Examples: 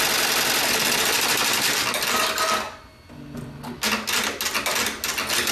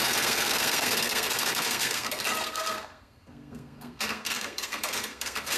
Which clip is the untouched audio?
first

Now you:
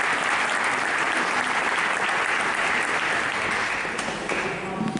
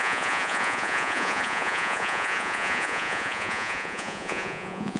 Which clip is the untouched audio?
first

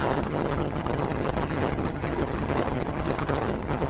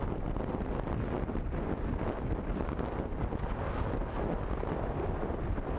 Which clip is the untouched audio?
second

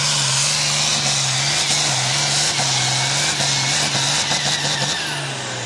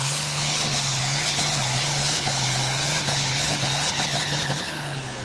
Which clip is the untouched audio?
first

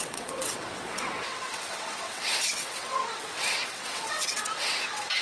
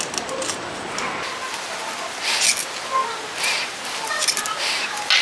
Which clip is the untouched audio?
second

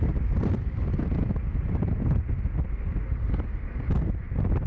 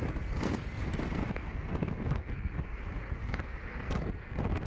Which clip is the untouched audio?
first